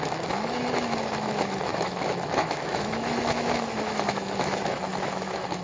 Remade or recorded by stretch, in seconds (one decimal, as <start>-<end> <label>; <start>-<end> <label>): 0.0-5.6 remade